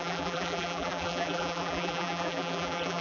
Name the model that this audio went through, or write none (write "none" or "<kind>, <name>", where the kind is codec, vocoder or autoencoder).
vocoder, BigVGAN v2